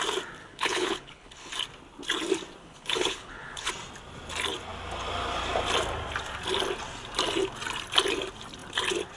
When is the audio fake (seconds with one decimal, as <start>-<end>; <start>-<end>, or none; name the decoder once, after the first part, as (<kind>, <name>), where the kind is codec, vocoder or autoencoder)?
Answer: 0.4-1.5 (codec, HILCodec); 2.6-3.7